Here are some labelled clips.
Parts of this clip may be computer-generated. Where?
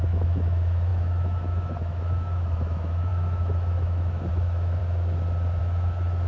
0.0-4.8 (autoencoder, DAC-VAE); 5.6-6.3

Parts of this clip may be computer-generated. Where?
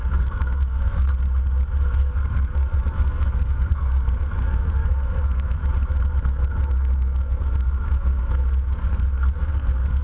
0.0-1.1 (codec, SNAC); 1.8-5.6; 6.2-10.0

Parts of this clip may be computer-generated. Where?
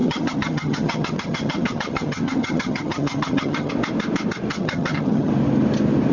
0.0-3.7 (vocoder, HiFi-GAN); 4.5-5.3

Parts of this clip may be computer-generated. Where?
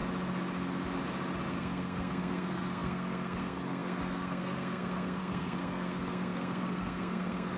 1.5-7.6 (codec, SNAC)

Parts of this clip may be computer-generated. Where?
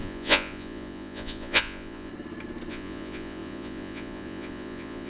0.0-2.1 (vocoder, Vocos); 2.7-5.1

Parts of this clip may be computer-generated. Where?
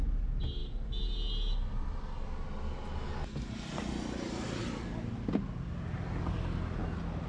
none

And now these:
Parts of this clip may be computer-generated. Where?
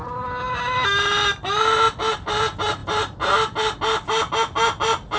none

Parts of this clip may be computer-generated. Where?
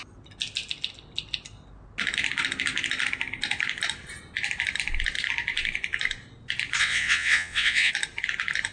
6.8-7.9 (vocoder, WaveNeXt)